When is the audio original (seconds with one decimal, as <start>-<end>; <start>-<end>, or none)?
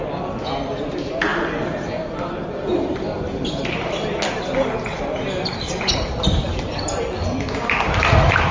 0.0-1.3; 1.9-2.7; 4.2-8.5